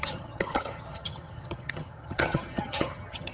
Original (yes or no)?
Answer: no